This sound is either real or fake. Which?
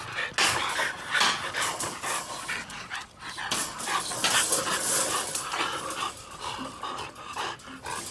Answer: real